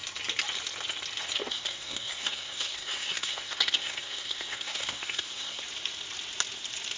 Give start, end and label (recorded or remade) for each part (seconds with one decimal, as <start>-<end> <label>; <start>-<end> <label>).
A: 0.0-1.4 recorded; 1.4-5.6 remade; 5.6-7.0 recorded